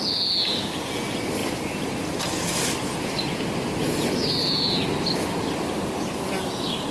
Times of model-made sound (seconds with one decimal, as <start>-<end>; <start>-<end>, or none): none